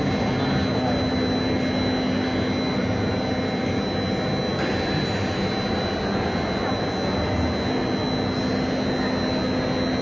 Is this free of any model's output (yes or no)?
yes